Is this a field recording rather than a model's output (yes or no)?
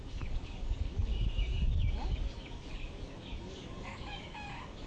no